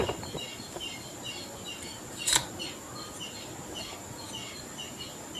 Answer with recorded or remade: recorded